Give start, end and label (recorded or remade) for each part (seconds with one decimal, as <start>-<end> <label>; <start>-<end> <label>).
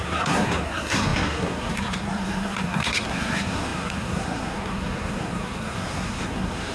0.0-6.7 remade